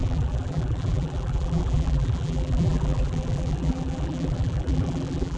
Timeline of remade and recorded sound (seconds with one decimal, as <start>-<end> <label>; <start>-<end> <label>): 0.0-5.4 remade